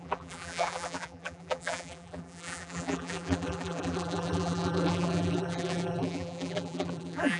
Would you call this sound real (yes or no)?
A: no